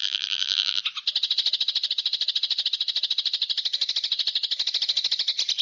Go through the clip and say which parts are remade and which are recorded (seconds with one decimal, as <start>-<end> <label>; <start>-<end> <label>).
0.0-0.8 remade; 0.8-5.6 recorded